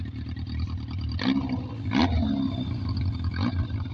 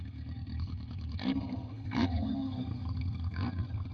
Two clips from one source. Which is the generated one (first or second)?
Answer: second